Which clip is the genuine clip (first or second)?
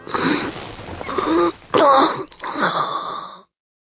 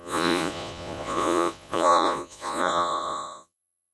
first